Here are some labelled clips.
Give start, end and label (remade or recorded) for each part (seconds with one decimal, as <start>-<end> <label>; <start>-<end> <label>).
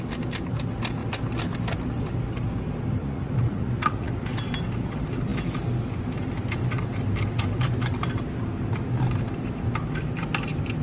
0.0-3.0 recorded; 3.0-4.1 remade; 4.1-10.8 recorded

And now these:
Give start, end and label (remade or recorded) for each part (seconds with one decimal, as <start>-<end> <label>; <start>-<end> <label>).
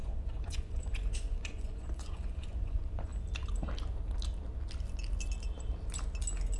0.0-3.1 remade; 3.1-6.6 recorded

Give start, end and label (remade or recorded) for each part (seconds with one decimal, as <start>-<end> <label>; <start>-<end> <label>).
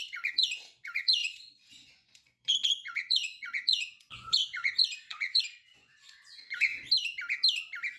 0.0-6.7 remade; 6.7-8.0 recorded